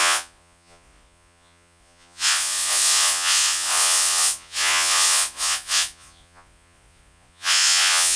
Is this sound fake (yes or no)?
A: yes